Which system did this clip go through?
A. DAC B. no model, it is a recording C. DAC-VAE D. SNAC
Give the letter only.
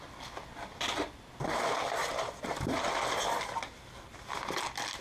B